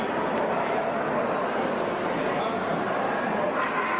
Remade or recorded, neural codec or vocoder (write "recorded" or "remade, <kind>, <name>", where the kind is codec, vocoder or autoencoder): recorded